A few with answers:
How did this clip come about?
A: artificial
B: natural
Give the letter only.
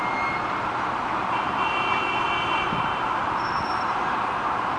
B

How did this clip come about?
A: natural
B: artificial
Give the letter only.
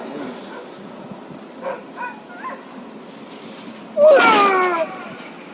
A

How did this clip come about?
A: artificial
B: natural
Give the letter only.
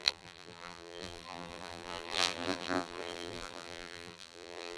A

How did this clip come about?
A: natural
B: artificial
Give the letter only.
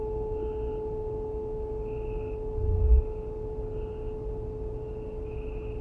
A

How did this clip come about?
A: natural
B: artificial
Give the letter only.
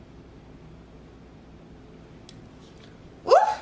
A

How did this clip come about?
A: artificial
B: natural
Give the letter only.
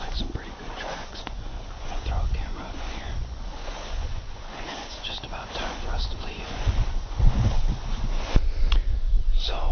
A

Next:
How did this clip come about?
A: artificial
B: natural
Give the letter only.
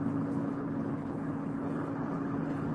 A